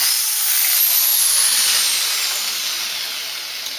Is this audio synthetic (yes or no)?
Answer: no